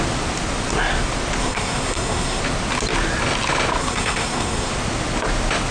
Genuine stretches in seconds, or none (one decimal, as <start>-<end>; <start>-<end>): 0.0-1.4; 2.4-3.8; 4.7-5.7